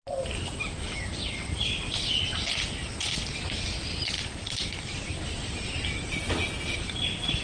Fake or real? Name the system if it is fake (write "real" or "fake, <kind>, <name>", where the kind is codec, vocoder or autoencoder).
real